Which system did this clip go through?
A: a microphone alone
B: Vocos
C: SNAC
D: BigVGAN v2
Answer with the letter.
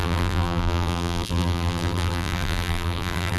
D